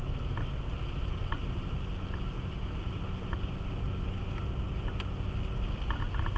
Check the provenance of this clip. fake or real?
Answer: real